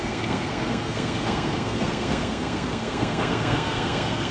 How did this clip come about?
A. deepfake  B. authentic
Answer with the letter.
A